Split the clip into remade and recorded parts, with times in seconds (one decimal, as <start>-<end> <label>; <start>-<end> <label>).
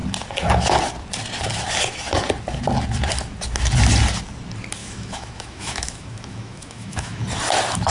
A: 0.0-4.8 recorded; 4.8-7.2 remade; 7.2-7.9 recorded